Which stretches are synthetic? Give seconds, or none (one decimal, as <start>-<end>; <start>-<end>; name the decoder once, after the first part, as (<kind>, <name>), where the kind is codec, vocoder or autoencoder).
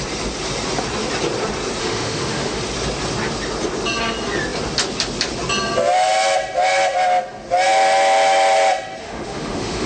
1.8-2.6 (autoencoder, DAC-VAE); 9.0-9.9